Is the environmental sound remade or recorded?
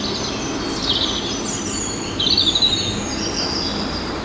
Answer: recorded